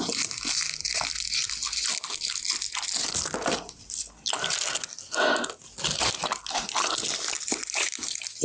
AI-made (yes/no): no